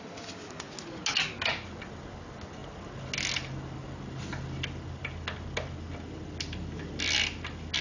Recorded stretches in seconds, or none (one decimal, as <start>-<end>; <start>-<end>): 0.0-7.8